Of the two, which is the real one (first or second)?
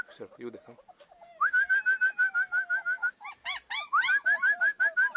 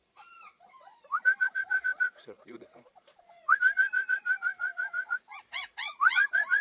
first